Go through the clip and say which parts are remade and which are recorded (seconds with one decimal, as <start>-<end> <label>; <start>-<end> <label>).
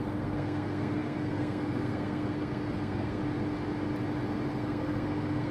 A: 0.0-3.2 remade; 3.2-4.5 recorded; 4.5-5.5 remade